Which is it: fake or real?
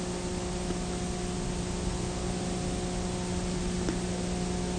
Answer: real